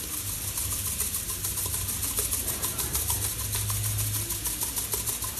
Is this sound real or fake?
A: real